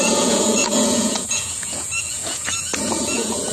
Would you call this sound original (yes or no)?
no